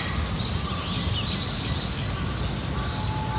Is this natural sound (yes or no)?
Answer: yes